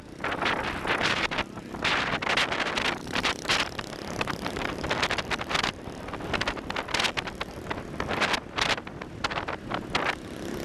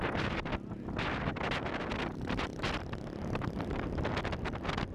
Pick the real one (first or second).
second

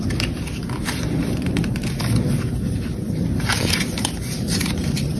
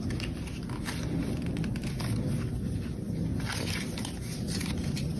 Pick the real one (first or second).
second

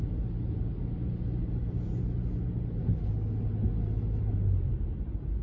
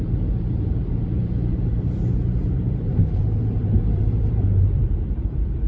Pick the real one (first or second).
first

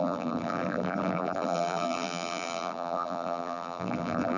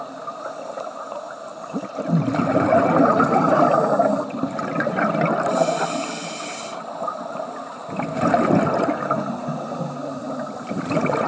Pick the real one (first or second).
second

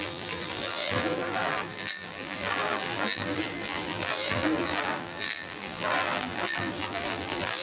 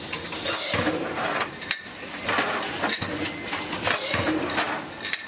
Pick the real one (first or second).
second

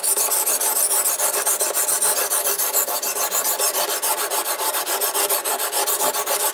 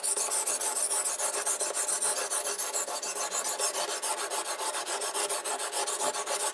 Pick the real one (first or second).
second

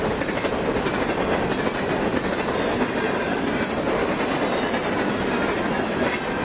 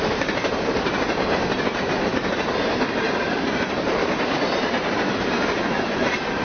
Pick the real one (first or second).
first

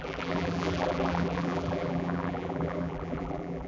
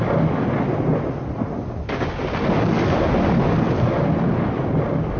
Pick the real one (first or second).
second